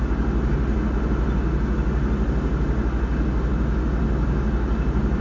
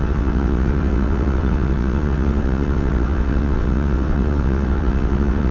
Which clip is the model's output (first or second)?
second